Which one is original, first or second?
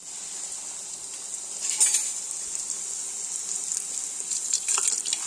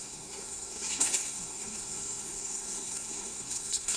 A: first